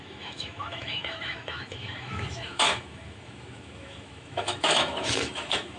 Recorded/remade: remade